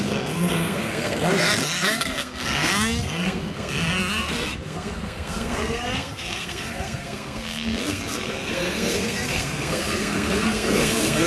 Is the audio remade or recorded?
remade